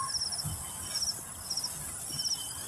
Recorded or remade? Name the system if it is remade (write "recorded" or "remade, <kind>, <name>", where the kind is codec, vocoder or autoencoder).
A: recorded